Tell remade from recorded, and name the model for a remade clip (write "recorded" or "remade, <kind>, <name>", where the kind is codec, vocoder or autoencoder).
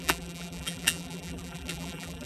remade, vocoder, BigVGAN v2